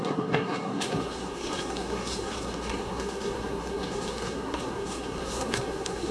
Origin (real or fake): fake